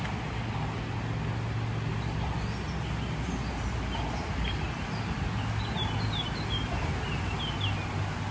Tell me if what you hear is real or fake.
real